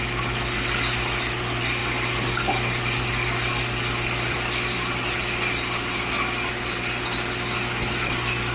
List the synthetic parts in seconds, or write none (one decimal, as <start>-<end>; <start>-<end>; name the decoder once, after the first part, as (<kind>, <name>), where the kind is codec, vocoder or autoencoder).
none